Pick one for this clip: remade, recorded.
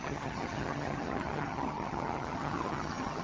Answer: remade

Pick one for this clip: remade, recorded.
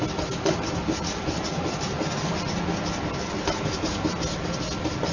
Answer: recorded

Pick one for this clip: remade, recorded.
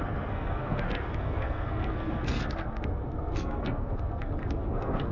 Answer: remade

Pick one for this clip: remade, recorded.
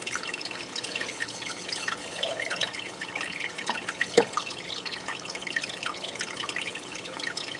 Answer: remade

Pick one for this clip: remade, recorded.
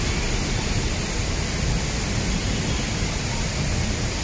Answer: recorded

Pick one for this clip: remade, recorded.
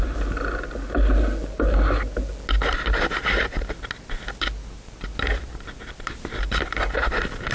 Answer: recorded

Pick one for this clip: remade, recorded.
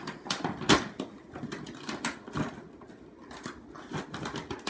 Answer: recorded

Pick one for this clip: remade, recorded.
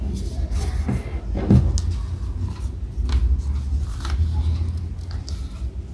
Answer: recorded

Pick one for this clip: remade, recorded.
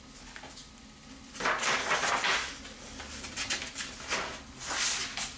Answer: recorded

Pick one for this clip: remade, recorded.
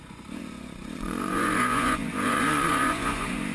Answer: remade